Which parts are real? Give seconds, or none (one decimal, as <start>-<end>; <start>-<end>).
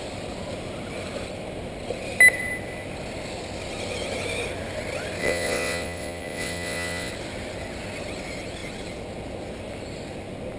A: 0.0-5.2; 7.1-10.6